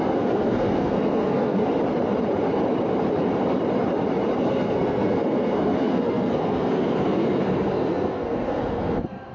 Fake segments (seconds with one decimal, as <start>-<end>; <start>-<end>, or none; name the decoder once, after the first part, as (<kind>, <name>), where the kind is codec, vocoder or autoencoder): 0.0-1.6 (codec, SNAC); 4.4-9.3